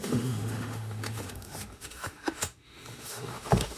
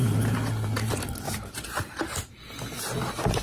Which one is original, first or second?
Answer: second